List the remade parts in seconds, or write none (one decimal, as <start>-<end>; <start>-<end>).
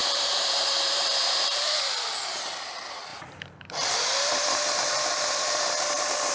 0.0-6.3